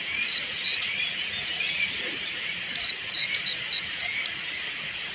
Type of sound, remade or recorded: remade